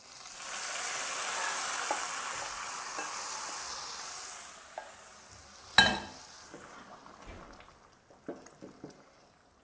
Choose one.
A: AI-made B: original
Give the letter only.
B